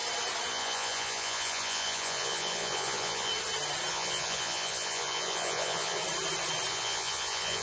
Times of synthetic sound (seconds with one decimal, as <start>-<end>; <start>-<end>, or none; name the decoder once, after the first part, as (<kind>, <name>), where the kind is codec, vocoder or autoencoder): 0.5-3.3 (vocoder, Vocos); 3.9-6.0; 6.7-7.6